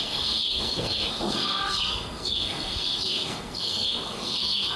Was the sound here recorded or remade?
remade